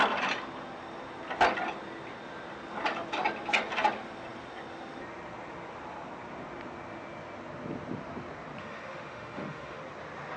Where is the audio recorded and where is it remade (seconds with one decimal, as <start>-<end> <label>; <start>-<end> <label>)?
0.0-8.6 recorded; 8.6-9.8 remade; 9.8-10.4 recorded

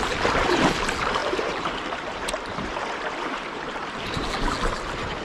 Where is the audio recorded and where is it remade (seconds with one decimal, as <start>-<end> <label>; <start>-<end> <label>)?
0.0-1.2 recorded; 1.2-4.3 remade; 4.3-5.2 recorded

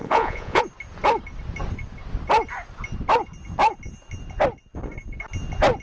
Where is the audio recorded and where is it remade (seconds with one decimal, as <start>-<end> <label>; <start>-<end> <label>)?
0.0-0.6 remade; 0.6-5.8 recorded